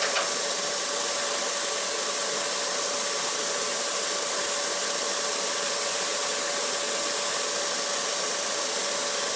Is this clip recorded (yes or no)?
yes